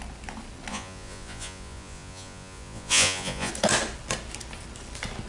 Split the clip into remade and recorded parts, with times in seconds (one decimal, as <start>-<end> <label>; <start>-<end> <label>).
0.0-0.7 recorded; 0.7-3.5 remade; 3.5-5.3 recorded